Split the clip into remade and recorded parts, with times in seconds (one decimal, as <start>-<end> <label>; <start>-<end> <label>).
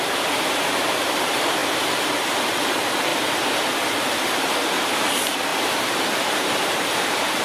0.0-1.6 remade; 1.6-2.1 recorded; 2.1-3.1 remade; 3.1-4.2 recorded; 4.2-7.4 remade